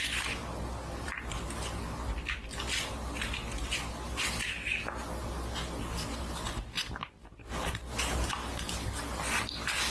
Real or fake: fake